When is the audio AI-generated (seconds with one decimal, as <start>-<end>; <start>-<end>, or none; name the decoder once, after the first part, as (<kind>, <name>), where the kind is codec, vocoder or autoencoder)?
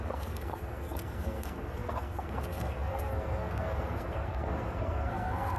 0.0-5.6 (codec, SNAC)